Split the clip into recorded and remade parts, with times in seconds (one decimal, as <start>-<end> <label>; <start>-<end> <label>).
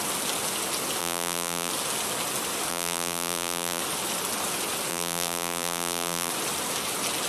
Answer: 0.0-1.0 recorded; 1.0-1.7 remade; 1.7-2.7 recorded; 2.7-3.8 remade; 3.8-4.9 recorded; 4.9-6.3 remade; 6.3-7.3 recorded